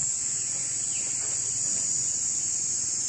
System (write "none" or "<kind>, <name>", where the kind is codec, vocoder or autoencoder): vocoder, Vocos